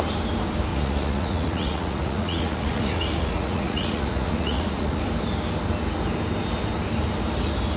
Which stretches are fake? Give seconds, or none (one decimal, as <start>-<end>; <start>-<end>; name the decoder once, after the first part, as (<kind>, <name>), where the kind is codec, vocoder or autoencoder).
0.7-5.0 (vocoder, Vocos)

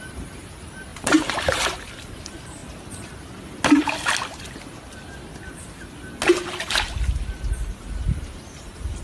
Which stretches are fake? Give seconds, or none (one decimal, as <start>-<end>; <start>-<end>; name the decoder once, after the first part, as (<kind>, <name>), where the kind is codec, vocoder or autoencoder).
0.0-2.6 (vocoder, BigVGAN v2); 7.8-9.0

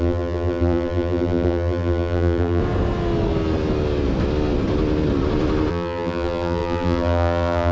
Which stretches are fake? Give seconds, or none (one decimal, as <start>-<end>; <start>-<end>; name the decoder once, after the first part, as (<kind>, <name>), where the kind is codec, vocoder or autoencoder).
0.0-2.6 (vocoder, BigVGAN v2); 5.7-7.7